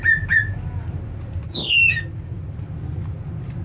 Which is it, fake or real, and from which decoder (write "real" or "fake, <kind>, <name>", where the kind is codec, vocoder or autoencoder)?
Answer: real